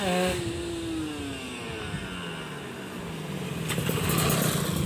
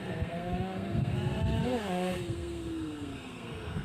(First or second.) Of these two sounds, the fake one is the second